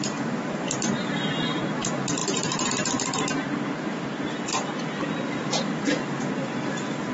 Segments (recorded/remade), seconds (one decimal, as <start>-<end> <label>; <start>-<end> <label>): 0.0-7.1 recorded